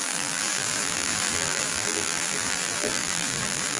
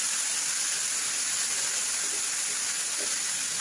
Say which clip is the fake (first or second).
first